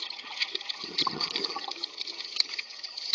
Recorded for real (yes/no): no